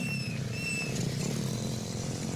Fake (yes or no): no